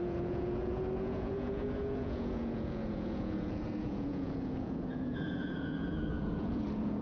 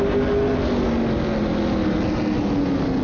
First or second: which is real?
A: second